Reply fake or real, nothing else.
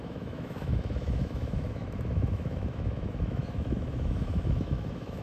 fake